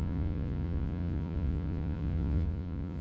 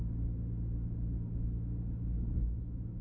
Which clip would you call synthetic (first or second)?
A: first